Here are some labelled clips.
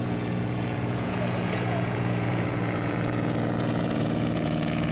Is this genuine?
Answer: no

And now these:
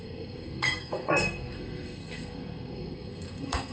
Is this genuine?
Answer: no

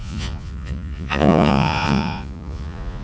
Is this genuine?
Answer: no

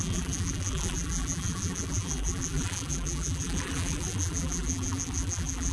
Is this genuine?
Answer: no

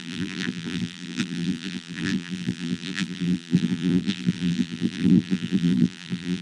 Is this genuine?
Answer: no